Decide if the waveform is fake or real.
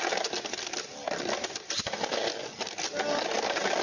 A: real